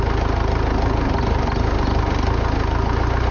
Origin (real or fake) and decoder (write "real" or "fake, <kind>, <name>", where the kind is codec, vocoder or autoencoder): real